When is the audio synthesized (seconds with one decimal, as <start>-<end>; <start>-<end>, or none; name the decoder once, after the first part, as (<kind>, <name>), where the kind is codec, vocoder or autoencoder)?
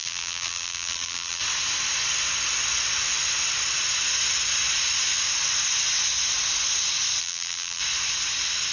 0.0-1.4 (vocoder, BigVGAN v2); 7.2-7.8